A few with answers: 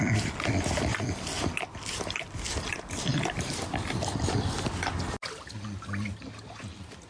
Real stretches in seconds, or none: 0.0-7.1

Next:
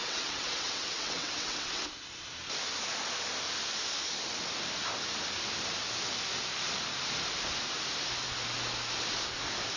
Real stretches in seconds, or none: 1.9-9.8

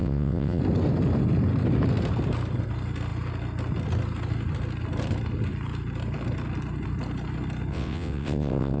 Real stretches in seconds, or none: 0.6-7.7

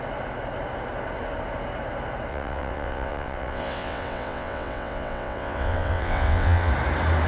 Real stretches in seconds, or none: 0.0-2.3; 6.7-7.3

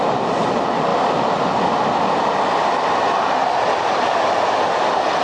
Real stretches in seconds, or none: 0.0-5.2

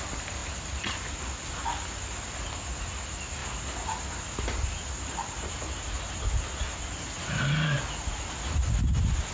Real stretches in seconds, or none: 0.0-9.3

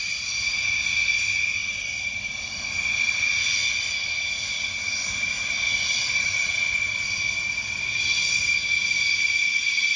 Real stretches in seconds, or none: 0.0-10.0

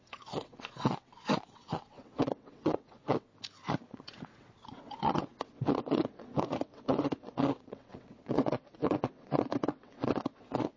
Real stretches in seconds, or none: 3.3-3.9